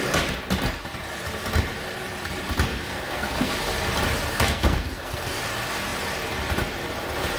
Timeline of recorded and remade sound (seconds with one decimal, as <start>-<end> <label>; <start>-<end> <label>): 0.0-2.7 recorded; 2.7-3.5 remade; 3.5-4.3 recorded; 4.3-5.4 remade; 5.4-7.4 recorded